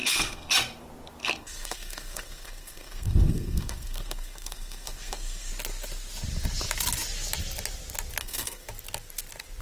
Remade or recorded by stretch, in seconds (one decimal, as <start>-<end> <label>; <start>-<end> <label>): 0.0-0.5 remade; 0.5-1.2 recorded; 1.2-5.5 remade; 5.5-8.2 recorded; 8.2-8.7 remade; 8.7-9.6 recorded